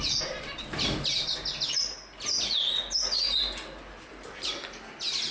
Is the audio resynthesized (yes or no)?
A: no